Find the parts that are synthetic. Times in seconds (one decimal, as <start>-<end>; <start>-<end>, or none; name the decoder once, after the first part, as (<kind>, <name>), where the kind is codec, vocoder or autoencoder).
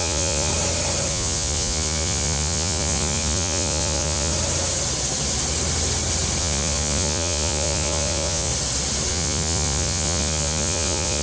0.0-0.5 (vocoder, Vocos); 1.1-4.3; 6.4-8.5; 9.1-11.2